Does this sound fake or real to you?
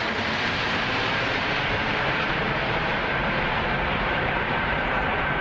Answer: fake